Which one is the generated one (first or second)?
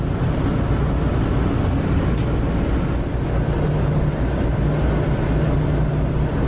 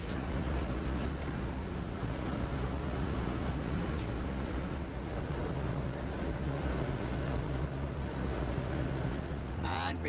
second